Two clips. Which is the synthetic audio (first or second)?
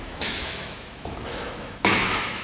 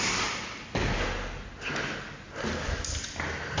first